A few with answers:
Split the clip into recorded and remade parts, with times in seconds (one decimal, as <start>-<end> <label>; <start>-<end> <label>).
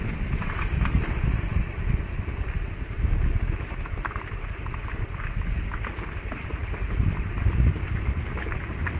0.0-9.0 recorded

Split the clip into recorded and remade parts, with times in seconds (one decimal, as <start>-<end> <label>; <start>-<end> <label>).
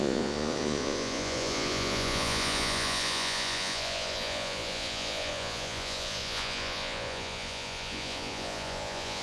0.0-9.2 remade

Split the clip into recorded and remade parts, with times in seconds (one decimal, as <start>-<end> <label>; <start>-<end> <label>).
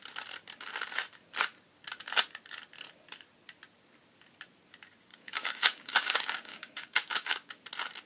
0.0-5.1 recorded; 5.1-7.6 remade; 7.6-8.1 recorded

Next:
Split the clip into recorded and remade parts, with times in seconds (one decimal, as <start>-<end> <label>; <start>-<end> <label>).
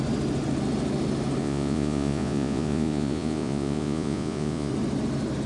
0.0-1.4 recorded; 1.4-4.7 remade; 4.7-5.5 recorded